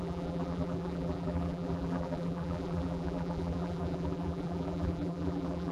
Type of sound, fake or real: fake